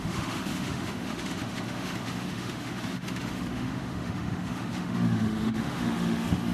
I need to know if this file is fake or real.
fake